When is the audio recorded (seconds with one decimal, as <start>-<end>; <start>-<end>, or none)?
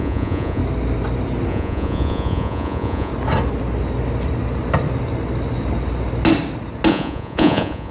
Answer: 0.6-1.5; 3.1-6.9